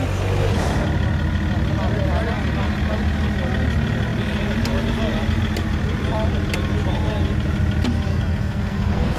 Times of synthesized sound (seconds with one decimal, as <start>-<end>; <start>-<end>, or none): 8.1-9.2

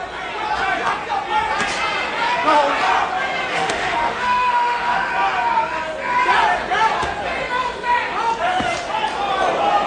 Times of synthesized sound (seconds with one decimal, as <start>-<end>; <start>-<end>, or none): 3.5-5.1

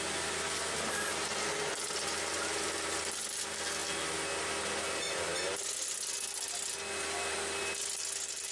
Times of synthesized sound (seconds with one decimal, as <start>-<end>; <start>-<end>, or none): none

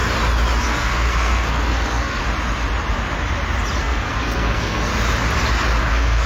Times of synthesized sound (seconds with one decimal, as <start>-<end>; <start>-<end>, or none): 0.6-2.2; 3.8-4.9; 5.8-6.3

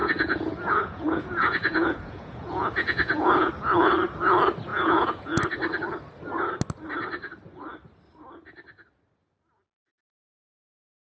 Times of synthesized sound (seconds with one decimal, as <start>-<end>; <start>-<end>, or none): 0.0-3.5; 4.7-5.4

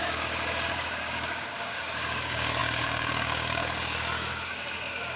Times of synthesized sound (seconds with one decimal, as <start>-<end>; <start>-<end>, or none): 0.0-5.2

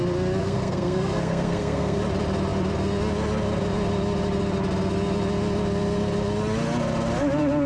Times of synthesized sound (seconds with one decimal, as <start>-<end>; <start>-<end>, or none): 0.4-2.0

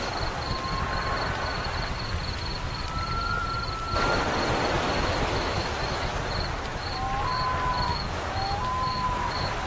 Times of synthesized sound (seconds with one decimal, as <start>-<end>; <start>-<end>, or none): 5.1-6.1; 7.9-8.6